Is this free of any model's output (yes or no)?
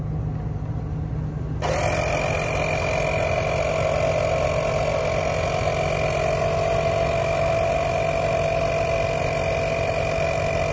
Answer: yes